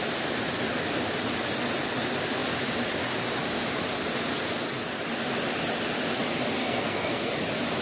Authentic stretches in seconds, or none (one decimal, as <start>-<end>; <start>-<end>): 0.0-6.6; 7.3-7.8